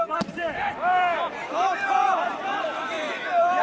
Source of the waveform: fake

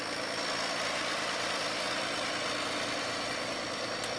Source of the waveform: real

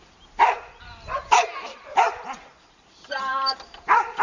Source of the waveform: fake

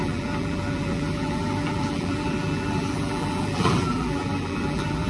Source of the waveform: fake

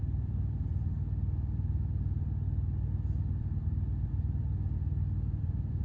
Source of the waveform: fake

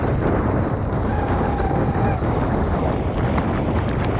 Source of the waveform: real